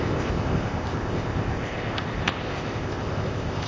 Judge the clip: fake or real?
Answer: fake